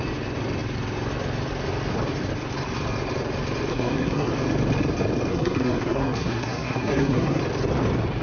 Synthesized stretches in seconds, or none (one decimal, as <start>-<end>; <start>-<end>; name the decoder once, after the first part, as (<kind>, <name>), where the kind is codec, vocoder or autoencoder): 3.7-4.3 (codec, SNAC); 5.3-7.4